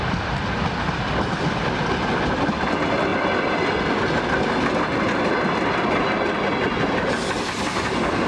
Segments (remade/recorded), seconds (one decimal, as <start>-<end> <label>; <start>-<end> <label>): 0.0-8.3 recorded